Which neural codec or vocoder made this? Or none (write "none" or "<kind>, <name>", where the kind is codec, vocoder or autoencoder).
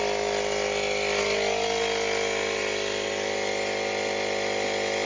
none